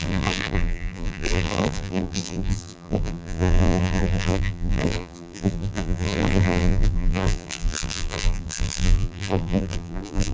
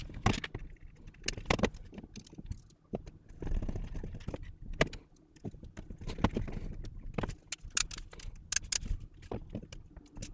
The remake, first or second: first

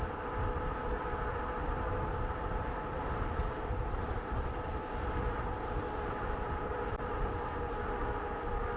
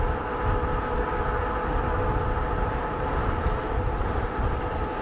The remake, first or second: first